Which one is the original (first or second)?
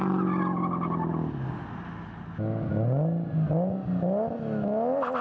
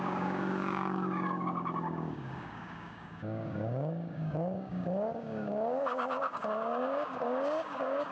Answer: first